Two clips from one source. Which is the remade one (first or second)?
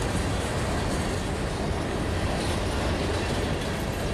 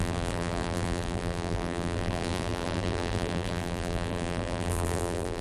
second